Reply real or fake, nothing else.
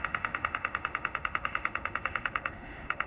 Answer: fake